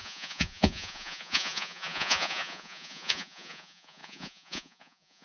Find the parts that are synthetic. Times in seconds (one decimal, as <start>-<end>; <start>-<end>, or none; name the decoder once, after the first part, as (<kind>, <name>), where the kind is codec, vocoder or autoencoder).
0.0-5.2 (vocoder, Vocos)

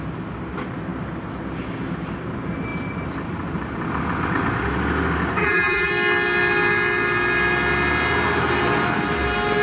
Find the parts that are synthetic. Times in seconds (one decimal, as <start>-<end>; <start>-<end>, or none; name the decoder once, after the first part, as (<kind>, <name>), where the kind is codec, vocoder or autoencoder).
5.4-5.9 (vocoder, BigVGAN v2)

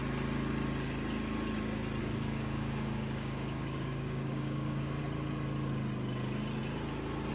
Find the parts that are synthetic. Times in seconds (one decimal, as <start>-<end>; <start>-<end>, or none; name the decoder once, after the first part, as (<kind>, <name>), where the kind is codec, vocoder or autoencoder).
2.0-5.0 (codec, DAC)

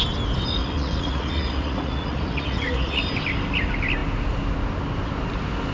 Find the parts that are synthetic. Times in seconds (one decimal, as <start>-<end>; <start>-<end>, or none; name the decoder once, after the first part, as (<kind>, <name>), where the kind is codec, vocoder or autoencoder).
0.6-3.0 (vocoder, Vocos)

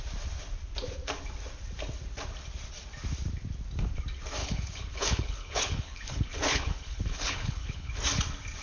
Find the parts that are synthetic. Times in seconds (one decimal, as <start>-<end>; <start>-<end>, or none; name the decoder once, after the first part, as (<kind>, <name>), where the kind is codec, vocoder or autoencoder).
4.4-7.9 (codec, HILCodec)